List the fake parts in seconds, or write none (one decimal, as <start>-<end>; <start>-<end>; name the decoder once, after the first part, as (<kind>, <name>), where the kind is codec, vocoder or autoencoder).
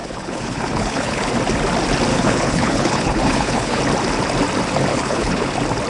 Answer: 0.0-1.3 (codec, HILCodec); 2.1-3.8; 4.9-5.5